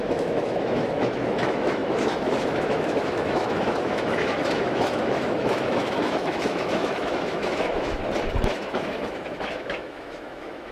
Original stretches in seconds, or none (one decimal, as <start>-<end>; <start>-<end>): 8.0-8.5